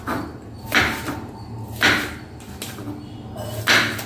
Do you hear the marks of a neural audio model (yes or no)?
no